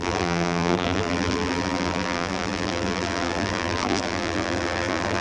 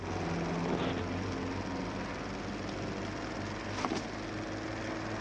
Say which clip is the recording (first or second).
second